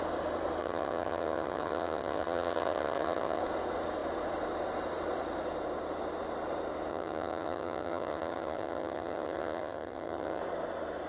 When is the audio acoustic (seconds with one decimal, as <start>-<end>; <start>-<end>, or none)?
0.0-0.6; 3.4-6.9; 10.4-11.1